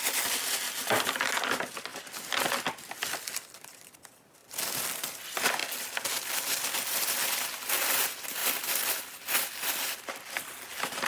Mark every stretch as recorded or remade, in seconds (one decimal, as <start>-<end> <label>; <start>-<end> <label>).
0.0-11.1 recorded